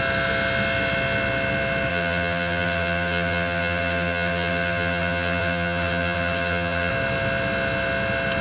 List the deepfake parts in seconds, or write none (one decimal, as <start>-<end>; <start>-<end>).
1.9-6.9

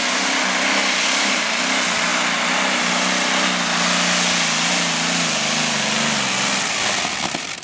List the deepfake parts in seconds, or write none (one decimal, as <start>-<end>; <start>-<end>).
none